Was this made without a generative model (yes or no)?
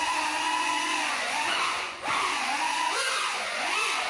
no